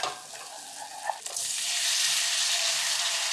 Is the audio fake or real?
real